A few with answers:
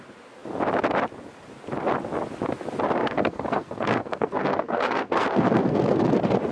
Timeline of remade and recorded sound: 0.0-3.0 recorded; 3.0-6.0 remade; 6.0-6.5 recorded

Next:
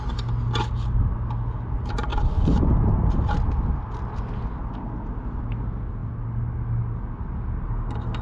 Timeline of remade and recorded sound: 0.0-8.2 recorded

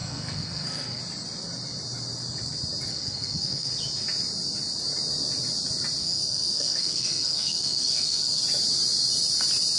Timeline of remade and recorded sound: 0.0-1.0 remade; 1.0-2.9 recorded; 2.9-3.7 remade; 3.7-6.0 recorded; 6.0-8.4 remade; 8.4-9.8 recorded

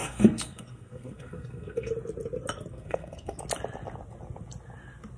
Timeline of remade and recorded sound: 0.0-1.9 remade; 1.9-2.7 recorded; 2.7-3.4 remade; 3.4-5.2 recorded

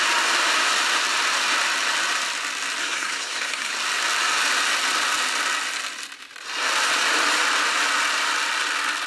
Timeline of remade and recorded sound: 0.0-2.8 recorded; 2.8-3.7 remade; 3.7-9.1 recorded